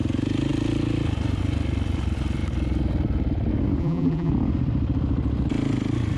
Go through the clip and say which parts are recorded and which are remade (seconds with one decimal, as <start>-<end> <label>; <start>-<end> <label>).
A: 0.0-3.8 recorded; 3.8-4.3 remade; 4.3-6.2 recorded